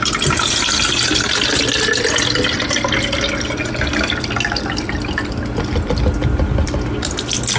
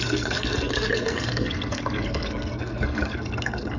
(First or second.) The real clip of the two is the first